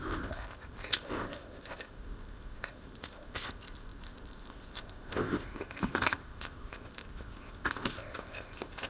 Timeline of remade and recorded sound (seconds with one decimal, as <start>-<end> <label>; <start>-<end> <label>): 0.0-8.9 remade